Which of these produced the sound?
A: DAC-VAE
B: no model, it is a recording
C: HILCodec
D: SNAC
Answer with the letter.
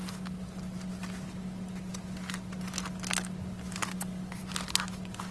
B